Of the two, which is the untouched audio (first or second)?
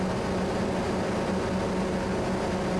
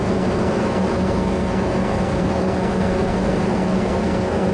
first